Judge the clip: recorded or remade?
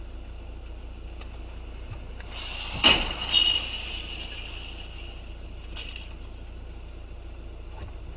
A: recorded